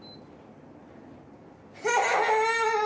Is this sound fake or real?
real